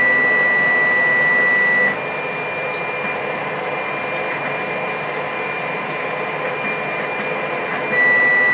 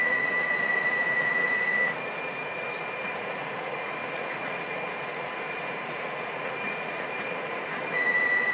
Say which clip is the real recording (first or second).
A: first